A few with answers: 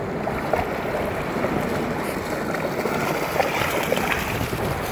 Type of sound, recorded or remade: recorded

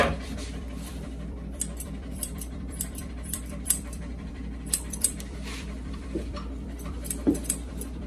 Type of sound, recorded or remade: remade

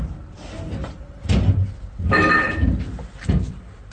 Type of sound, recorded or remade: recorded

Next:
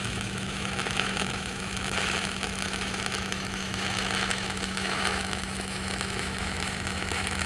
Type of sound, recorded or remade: remade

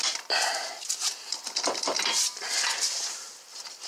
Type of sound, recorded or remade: remade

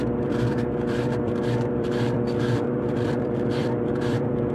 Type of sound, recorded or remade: remade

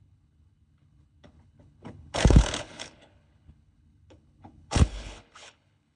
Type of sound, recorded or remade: remade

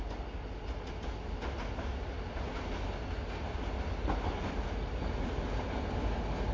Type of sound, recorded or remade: recorded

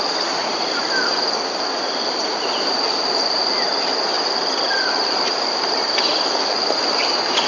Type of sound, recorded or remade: remade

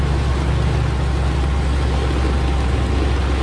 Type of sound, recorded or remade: recorded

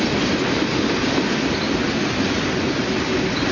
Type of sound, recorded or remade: recorded